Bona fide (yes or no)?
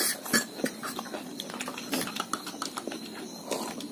yes